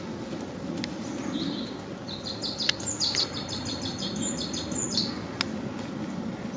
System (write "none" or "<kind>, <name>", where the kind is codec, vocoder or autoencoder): none